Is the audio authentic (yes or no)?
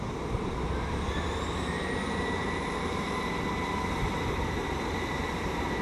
no